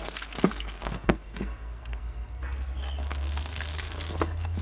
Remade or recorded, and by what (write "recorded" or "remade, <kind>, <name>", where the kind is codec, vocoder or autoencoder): remade, codec, SNAC